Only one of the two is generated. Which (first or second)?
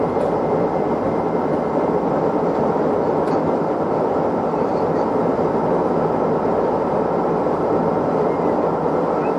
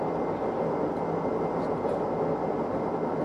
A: first